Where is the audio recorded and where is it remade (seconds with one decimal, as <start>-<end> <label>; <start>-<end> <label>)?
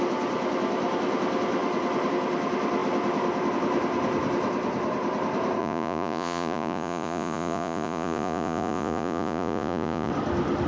0.0-5.6 recorded; 5.6-10.1 remade; 10.1-10.7 recorded